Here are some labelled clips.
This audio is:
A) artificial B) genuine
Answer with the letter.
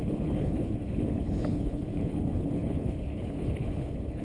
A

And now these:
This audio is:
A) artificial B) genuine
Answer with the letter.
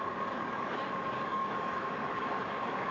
A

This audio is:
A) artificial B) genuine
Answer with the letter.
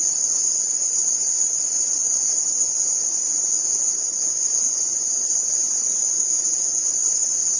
B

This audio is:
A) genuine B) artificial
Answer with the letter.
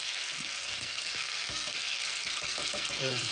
B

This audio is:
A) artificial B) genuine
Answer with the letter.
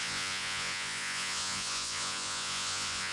A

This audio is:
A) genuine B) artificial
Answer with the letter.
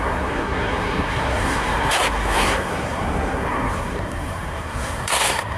B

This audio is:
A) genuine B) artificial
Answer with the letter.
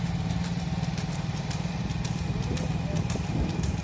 A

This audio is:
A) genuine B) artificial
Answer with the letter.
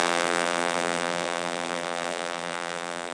B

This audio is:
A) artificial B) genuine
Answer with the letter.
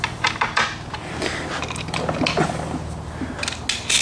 B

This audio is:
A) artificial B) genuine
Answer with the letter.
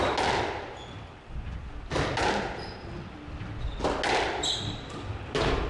B